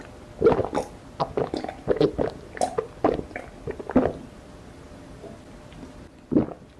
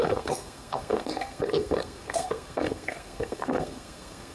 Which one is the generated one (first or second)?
second